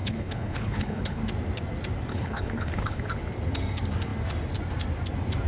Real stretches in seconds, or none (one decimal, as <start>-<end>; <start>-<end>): 1.2-2.1; 3.0-5.5